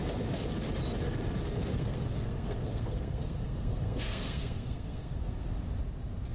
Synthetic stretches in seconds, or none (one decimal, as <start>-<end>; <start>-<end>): 1.7-5.5